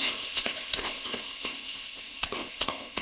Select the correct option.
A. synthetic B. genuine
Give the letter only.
A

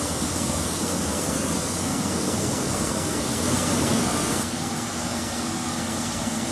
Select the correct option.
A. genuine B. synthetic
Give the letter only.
B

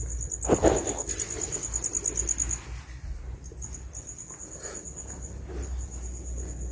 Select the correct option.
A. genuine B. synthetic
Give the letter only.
A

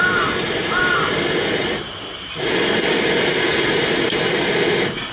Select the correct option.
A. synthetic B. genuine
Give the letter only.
B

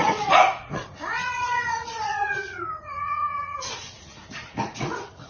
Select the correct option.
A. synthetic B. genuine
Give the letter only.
A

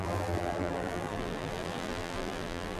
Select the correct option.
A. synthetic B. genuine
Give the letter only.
A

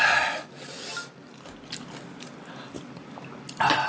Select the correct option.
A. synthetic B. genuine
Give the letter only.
B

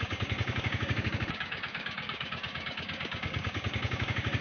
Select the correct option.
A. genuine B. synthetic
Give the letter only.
B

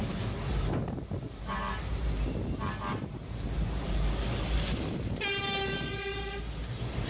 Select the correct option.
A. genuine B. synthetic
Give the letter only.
B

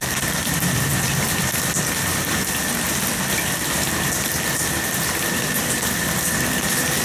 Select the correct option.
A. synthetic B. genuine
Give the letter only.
B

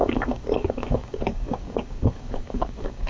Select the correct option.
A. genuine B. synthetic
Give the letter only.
B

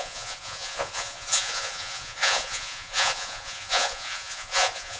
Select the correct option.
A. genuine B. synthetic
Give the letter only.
B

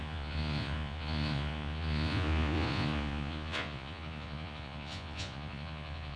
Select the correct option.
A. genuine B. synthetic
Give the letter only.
B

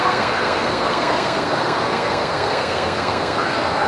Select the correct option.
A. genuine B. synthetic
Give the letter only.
B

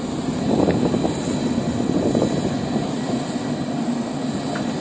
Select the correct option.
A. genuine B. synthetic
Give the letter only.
A